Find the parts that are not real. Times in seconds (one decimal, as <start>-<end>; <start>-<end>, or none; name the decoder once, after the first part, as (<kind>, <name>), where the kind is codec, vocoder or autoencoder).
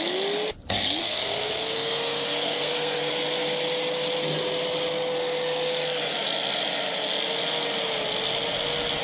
1.0-3.1 (codec, SNAC)